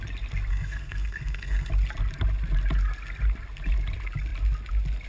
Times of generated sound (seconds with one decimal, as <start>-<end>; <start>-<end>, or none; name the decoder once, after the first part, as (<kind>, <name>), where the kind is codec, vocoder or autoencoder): 0.5-1.7 (codec, SNAC)